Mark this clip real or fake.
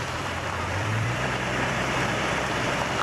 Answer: fake